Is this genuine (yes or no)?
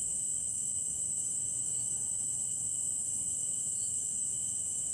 no